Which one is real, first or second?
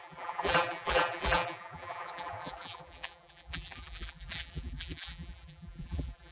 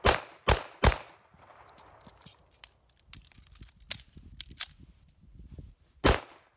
second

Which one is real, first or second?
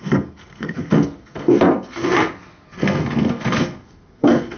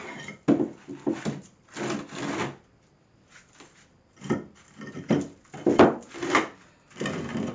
second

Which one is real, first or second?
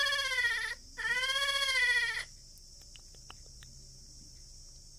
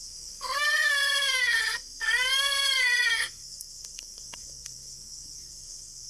first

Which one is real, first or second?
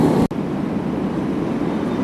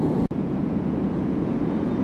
first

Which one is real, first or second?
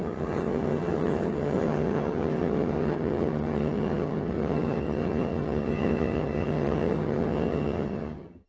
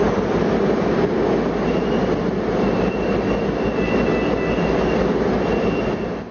second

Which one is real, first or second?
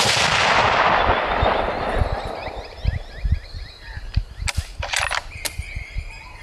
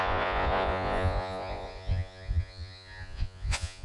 first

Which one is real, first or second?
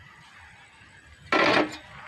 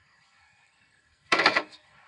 first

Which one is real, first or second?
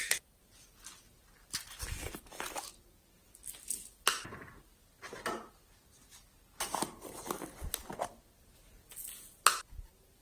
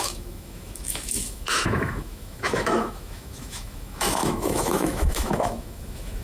first